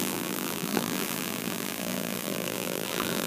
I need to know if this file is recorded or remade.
remade